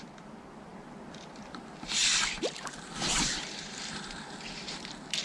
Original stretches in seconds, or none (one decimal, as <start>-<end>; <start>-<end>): 0.0-2.0